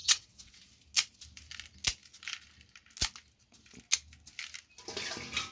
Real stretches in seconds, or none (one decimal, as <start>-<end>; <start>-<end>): 0.6-5.5